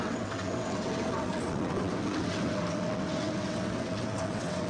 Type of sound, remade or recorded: remade